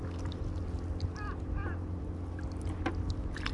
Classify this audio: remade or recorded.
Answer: recorded